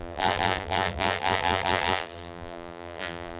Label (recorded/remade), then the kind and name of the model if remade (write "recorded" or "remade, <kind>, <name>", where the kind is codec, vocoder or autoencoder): remade, vocoder, BigVGAN v2